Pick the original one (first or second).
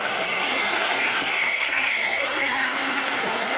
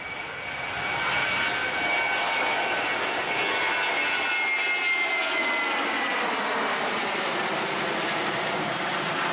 second